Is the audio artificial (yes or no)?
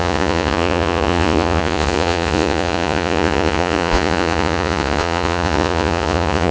yes